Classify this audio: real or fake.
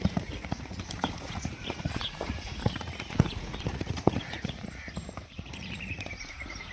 fake